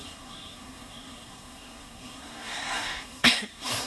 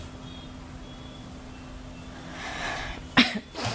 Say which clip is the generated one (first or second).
first